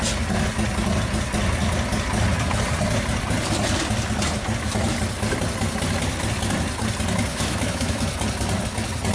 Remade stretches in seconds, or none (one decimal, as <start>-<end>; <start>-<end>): 7.3-8.0